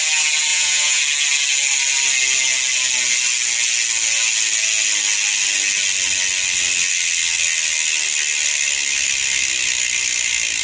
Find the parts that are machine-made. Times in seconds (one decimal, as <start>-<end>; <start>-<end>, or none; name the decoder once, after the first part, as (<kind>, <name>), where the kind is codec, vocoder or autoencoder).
0.5-1.0 (vocoder, Vocos)

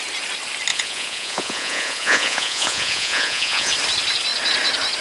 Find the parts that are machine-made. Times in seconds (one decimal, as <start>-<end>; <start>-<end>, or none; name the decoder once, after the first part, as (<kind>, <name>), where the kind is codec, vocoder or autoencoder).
0.7-3.7 (vocoder, Vocos)

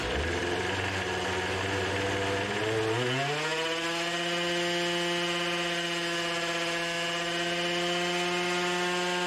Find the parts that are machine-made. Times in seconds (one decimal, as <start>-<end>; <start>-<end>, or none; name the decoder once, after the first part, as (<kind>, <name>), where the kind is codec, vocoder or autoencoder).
none

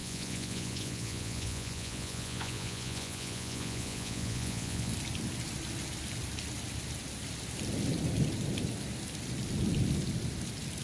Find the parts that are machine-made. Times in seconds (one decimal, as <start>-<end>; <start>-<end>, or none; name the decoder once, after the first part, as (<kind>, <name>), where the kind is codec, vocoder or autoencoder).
0.0-4.9 (vocoder, Vocos)

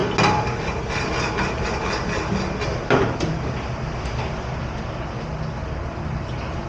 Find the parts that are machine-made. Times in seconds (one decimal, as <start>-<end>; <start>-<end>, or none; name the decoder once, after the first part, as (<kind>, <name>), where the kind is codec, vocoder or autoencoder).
none